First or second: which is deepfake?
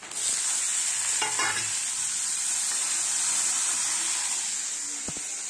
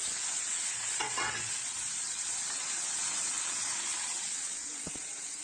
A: second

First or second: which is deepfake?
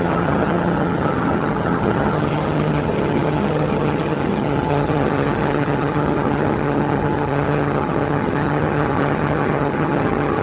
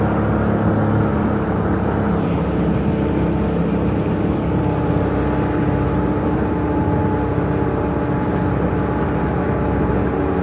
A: first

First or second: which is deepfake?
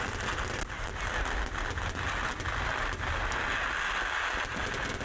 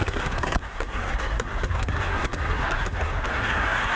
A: second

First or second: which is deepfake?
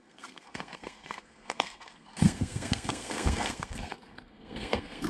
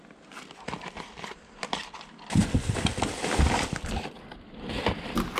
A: first